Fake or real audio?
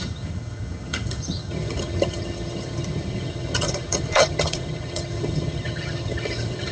fake